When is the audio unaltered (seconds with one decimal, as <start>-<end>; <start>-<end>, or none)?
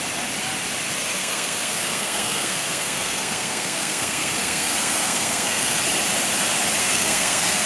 0.0-1.2; 5.8-6.8